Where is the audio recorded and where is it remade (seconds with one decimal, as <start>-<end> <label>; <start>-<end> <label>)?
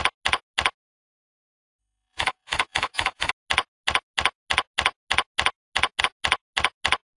0.0-1.8 recorded; 1.8-3.3 remade; 3.3-7.2 recorded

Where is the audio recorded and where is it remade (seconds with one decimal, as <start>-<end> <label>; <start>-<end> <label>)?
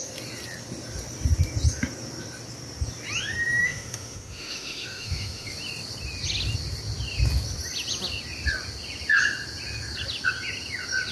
0.0-3.6 recorded; 3.6-5.5 remade; 5.5-11.1 recorded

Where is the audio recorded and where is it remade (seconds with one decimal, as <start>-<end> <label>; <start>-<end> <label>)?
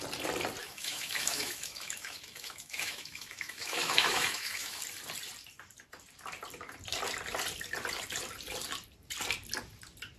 0.0-0.6 recorded; 0.6-4.8 remade; 4.8-10.2 recorded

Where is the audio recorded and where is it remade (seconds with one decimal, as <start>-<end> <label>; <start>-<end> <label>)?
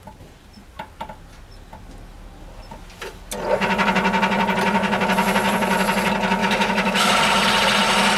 0.0-6.4 recorded; 6.4-7.1 remade; 7.1-8.2 recorded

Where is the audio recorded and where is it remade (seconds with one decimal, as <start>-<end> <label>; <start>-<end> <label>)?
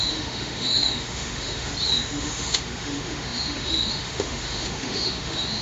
0.0-1.7 remade; 1.7-2.2 recorded; 2.2-5.6 remade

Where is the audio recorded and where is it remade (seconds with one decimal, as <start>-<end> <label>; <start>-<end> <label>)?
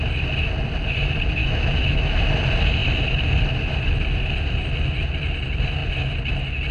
0.0-1.4 recorded; 1.4-2.1 remade; 2.1-6.7 recorded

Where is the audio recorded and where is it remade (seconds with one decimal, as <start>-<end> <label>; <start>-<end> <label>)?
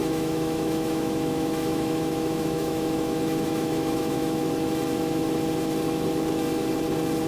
0.0-4.4 remade; 4.4-7.3 recorded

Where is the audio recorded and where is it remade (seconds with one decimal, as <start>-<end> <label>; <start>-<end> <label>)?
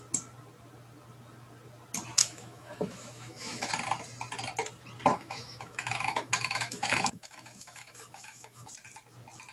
0.0-2.2 recorded; 2.2-3.7 remade; 3.7-5.1 recorded; 5.1-8.7 remade; 8.7-9.5 recorded